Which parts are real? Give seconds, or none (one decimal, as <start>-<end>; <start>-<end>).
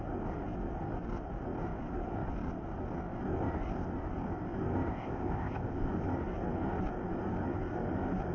0.0-4.9; 5.9-8.3